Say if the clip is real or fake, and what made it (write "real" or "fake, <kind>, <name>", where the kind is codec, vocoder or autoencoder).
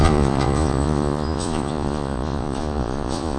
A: fake, vocoder, Vocos